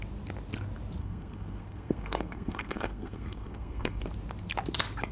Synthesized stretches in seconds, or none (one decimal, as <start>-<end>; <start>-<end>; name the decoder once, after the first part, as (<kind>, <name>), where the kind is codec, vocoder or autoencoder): 1.0-4.0 (codec, SNAC)